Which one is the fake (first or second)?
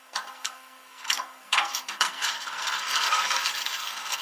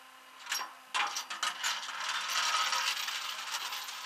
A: first